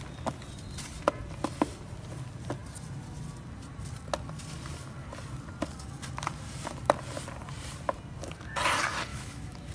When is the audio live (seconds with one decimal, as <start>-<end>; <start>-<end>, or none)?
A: 0.0-9.1